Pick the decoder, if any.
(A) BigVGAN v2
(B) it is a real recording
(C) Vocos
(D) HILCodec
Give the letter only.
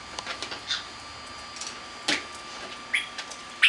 B